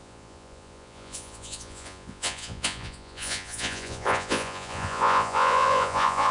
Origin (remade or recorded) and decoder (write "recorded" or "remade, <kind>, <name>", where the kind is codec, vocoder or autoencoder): remade, vocoder, Vocos